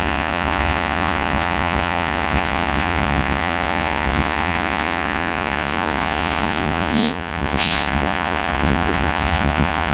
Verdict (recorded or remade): remade